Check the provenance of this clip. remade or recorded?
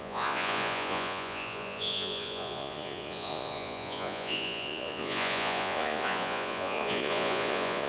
remade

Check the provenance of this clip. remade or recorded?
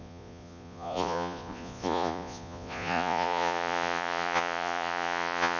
remade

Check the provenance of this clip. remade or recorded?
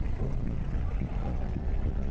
remade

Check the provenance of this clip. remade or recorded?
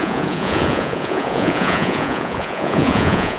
remade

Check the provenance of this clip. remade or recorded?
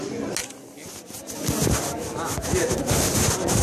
recorded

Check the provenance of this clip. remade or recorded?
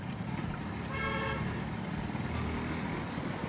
recorded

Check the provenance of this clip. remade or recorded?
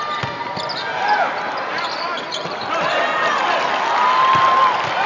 recorded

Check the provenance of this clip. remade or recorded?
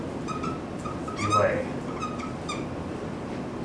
recorded